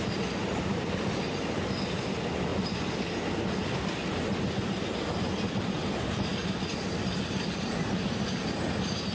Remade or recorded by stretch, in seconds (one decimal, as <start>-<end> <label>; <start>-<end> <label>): 0.0-9.1 recorded